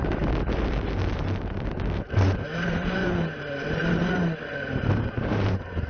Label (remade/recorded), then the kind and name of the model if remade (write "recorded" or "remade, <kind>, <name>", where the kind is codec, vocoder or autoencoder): remade, vocoder, BigVGAN v2